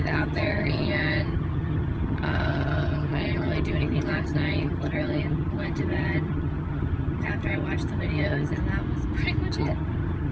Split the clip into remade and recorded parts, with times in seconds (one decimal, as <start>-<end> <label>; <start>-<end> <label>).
0.0-8.6 remade; 8.6-9.5 recorded; 9.5-10.3 remade